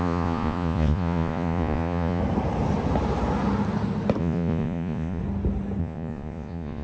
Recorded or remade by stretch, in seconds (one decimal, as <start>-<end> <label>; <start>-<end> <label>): 0.0-2.2 remade; 2.2-4.2 recorded; 4.2-5.2 remade; 5.2-5.8 recorded; 5.8-6.8 remade